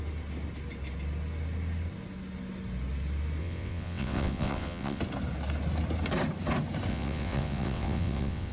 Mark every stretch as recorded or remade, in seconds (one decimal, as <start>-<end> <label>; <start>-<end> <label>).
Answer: 0.0-3.4 recorded; 3.4-5.0 remade; 5.0-6.9 recorded; 6.9-8.5 remade